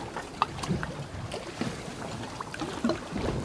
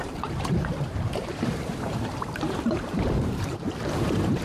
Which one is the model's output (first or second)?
second